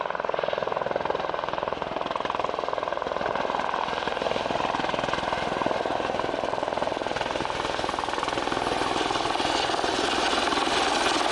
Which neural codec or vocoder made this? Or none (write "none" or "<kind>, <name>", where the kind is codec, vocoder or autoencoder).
none